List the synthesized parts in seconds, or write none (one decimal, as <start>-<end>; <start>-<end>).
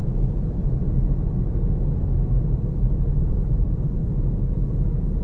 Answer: 2.3-4.0